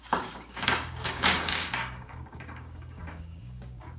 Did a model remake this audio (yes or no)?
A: yes